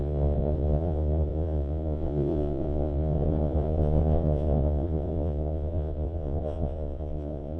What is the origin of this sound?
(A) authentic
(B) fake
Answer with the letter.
B